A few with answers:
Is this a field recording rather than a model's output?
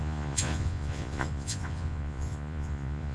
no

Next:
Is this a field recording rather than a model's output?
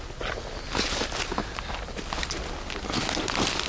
yes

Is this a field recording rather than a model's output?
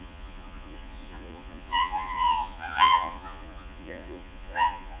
no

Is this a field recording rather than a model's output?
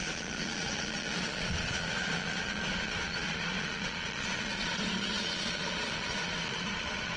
no